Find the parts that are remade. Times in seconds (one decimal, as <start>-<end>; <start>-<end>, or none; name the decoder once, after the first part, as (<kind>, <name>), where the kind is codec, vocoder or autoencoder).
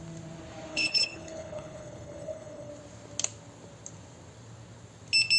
0.7-2.7 (codec, HILCodec)